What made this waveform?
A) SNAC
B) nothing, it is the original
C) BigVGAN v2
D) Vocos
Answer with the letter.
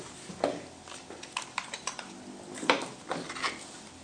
C